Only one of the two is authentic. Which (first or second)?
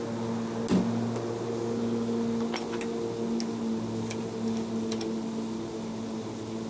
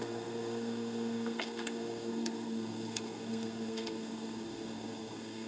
first